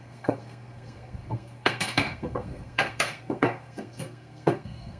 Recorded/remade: remade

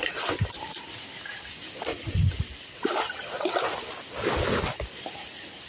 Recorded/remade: recorded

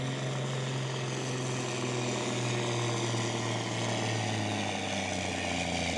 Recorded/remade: recorded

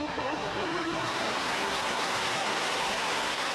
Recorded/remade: remade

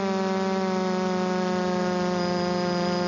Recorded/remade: recorded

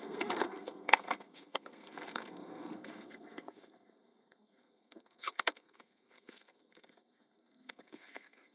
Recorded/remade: remade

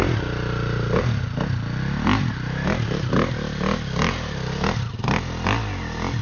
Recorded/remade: recorded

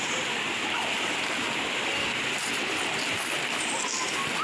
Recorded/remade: recorded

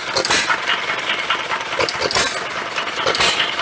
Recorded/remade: recorded